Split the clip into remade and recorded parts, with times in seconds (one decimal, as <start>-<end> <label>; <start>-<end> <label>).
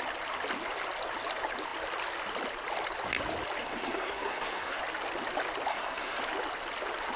0.0-3.6 recorded; 3.6-4.8 remade; 4.8-5.7 recorded; 5.7-6.2 remade; 6.2-7.2 recorded